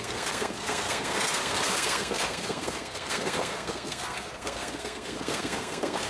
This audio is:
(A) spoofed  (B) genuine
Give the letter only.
A